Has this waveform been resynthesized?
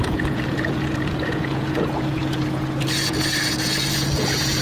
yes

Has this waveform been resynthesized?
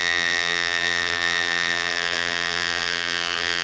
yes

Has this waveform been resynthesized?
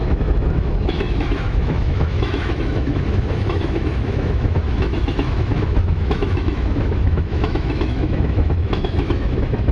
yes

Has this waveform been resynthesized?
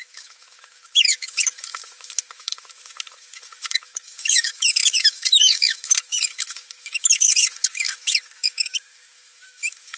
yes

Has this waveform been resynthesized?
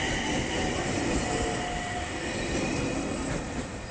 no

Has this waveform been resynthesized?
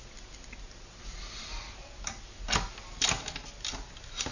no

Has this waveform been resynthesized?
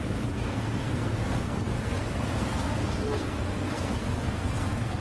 yes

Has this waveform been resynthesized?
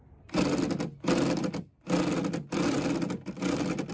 no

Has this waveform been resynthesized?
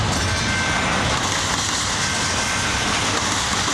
no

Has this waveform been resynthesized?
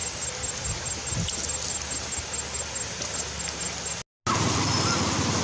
no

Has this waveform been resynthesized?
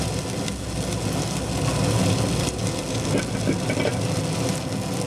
no